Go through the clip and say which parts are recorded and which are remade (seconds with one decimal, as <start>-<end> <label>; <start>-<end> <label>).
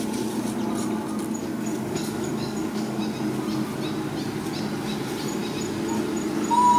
0.0-1.4 recorded; 1.4-3.0 remade; 3.0-6.8 recorded